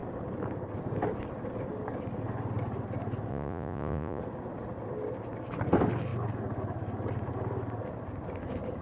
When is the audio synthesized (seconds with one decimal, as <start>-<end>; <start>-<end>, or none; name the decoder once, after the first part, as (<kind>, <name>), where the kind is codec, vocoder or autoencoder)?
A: 3.3-4.2 (vocoder, Vocos)